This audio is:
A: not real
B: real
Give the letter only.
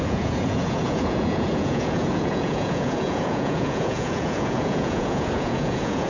A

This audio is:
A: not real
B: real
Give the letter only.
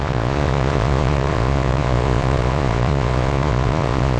A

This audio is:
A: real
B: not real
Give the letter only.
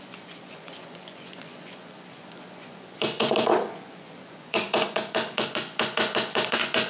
B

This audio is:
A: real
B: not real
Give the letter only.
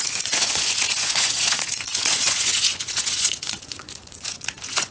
B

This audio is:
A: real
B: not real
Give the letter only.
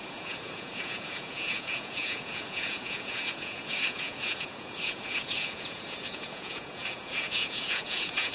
B